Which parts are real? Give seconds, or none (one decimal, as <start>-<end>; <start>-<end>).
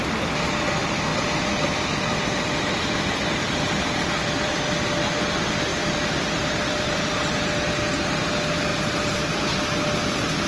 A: 0.0-1.1; 5.2-5.7; 8.2-8.7; 9.6-10.5